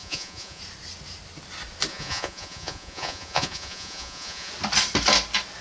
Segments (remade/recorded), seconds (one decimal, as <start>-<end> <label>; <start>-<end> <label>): 0.0-0.6 remade; 0.6-1.9 recorded; 1.9-4.5 remade; 4.5-5.6 recorded